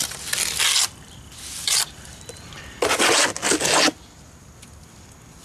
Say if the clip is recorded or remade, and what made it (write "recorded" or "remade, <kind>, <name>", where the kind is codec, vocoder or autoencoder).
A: recorded